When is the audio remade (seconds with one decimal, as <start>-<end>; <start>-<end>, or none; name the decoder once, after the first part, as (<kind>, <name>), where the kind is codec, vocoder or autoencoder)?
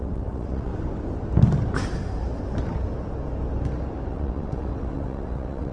0.0-0.7 (vocoder, WaveNeXt); 4.1-5.7